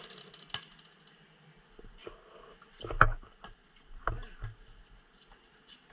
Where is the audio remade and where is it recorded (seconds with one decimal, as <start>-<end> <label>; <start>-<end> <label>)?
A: 0.0-5.9 recorded